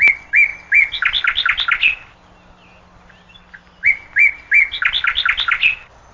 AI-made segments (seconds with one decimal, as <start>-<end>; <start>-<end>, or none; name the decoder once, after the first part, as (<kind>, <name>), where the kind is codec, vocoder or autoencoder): none